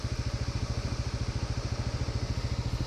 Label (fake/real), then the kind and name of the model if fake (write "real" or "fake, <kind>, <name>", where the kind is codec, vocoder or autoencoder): real